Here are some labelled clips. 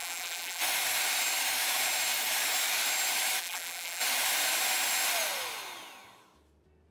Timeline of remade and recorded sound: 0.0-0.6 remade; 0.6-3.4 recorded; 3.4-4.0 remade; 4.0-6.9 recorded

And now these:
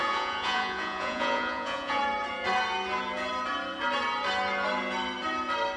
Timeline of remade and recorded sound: 0.0-2.0 remade; 2.0-5.8 recorded

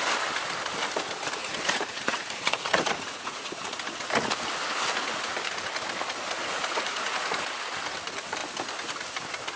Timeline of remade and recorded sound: 0.0-1.4 recorded; 1.4-3.5 remade; 3.5-6.4 recorded; 6.4-7.3 remade; 7.3-9.6 recorded

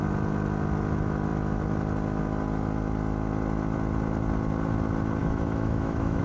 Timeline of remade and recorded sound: 0.0-5.2 recorded; 5.2-6.2 remade

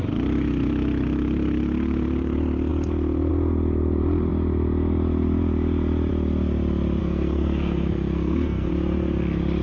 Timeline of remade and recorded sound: 0.0-7.0 recorded; 7.0-8.7 remade; 8.7-9.6 recorded